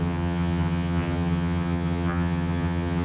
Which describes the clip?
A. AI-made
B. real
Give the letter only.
A